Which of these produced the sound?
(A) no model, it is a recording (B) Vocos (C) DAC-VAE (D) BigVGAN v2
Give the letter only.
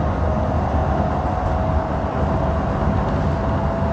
A